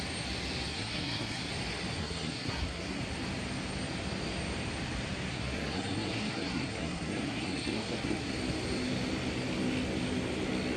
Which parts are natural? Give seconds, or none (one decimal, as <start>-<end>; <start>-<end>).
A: 0.0-0.7; 1.5-2.0; 3.0-5.3; 8.3-10.8